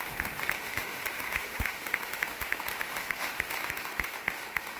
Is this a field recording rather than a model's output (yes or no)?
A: no